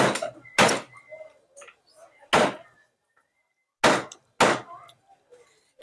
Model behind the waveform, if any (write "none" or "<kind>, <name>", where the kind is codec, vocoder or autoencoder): none